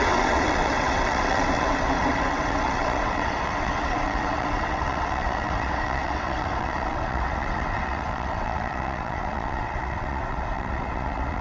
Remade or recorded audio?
remade